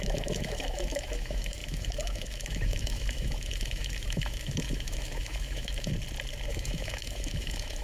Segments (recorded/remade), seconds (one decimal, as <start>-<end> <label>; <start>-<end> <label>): 0.0-5.9 remade; 5.9-6.5 recorded; 6.5-7.8 remade